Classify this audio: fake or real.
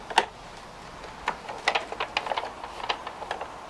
real